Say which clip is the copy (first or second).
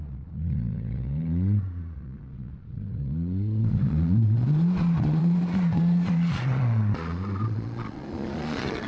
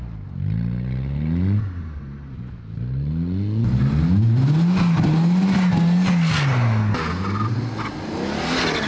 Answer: first